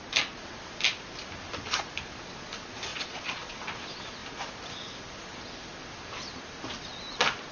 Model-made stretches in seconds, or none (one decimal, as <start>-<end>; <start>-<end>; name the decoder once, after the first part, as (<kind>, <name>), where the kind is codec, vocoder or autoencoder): 2.9-3.6 (vocoder, Vocos)